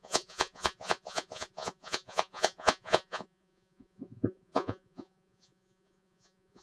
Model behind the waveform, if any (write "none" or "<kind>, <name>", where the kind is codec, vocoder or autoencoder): vocoder, Vocos